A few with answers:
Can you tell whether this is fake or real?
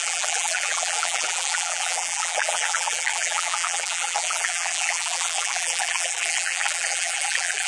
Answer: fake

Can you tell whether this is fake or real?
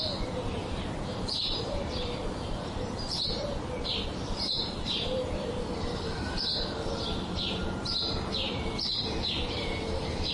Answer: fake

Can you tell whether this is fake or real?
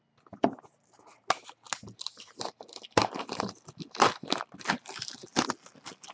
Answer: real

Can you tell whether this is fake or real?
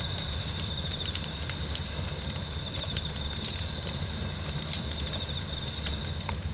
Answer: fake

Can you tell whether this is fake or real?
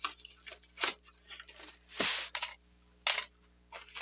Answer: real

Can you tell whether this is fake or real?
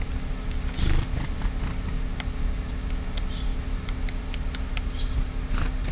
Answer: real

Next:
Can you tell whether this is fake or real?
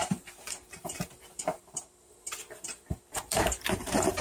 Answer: fake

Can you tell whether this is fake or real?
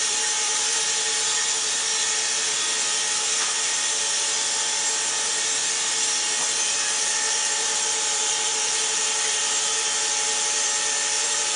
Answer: fake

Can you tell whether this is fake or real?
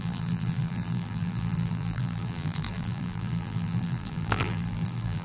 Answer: fake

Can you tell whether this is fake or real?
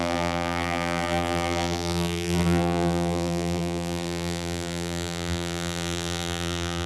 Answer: fake